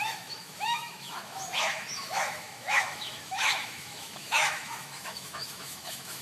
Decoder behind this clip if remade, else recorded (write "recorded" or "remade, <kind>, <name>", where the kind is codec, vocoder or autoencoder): remade, autoencoder, DAC-VAE